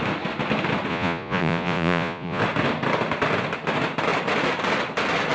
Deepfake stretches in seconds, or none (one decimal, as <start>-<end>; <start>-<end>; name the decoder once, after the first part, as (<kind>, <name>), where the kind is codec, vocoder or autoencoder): 0.9-2.4 (vocoder, Vocos)